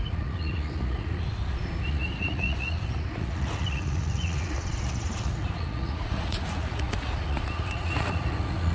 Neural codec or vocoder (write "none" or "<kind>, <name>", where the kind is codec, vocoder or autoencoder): vocoder, Vocos